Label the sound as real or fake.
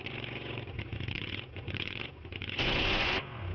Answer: fake